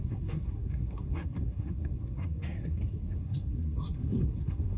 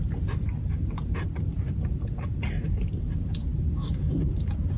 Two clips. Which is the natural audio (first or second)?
second